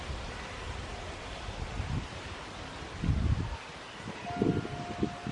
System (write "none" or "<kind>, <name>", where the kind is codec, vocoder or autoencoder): none